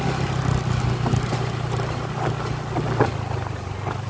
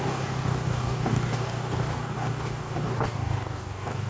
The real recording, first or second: first